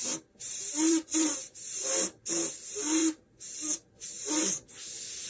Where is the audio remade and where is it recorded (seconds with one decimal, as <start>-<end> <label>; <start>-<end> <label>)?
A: 0.0-2.2 remade; 2.2-3.0 recorded; 3.0-4.3 remade; 4.3-5.3 recorded